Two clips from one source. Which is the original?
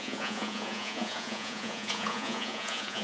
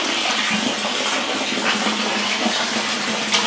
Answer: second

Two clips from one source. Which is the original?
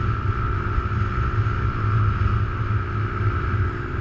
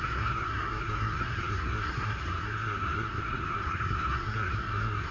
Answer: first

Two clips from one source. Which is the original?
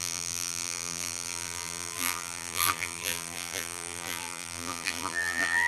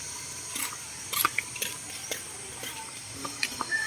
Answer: second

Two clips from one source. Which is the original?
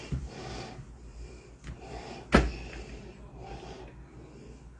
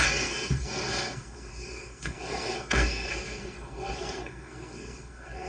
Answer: first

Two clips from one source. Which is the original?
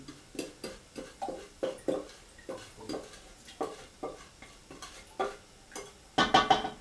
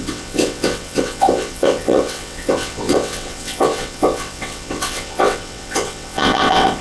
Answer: first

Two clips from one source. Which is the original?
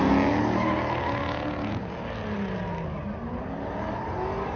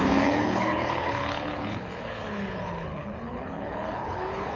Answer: first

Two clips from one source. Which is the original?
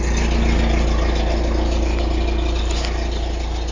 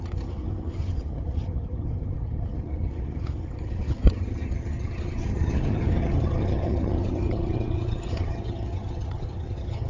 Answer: first